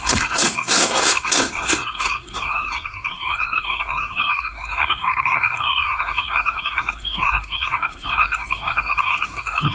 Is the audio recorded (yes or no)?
no